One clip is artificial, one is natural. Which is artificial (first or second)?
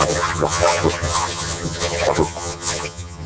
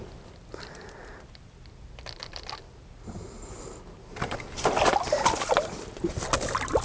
first